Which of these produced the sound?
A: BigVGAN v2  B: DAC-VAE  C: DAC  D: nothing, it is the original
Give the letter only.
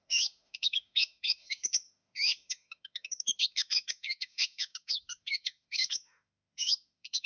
B